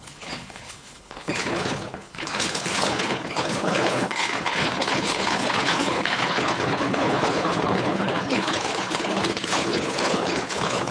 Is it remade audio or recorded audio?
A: remade